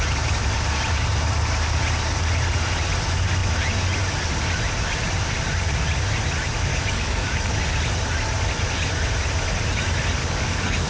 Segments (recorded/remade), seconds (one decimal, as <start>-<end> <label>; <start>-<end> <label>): 0.0-6.7 recorded; 6.7-7.6 remade; 7.6-10.2 recorded; 10.2-10.9 remade